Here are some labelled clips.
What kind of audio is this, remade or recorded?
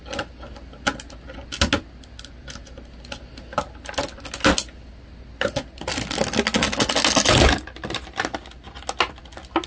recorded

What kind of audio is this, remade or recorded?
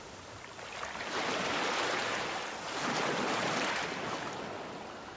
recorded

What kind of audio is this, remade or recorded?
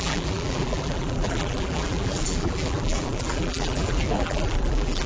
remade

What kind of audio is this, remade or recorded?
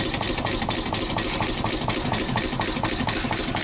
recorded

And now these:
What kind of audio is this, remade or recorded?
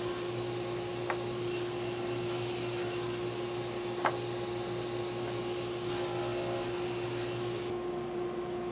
recorded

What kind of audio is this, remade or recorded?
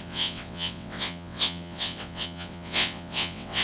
remade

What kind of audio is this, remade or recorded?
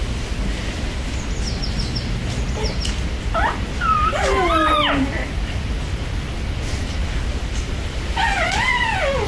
recorded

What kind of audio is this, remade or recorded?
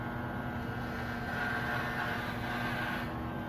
recorded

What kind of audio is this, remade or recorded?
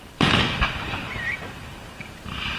remade